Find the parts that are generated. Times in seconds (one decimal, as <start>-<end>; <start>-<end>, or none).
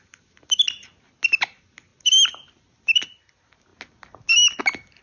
none